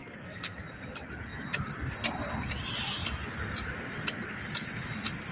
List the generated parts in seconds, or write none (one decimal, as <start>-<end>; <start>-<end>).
0.0-0.6